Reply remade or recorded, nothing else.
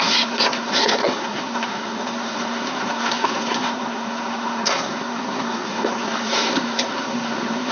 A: remade